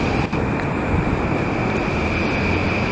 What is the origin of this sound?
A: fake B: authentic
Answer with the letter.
B